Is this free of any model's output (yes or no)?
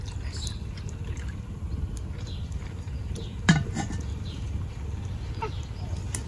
yes